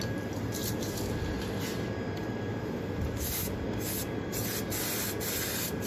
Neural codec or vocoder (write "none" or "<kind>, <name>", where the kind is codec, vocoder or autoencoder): none